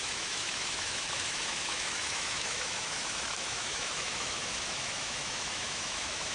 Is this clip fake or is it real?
fake